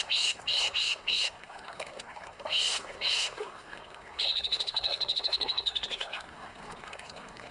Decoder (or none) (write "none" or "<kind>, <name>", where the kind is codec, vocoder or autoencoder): codec, SNAC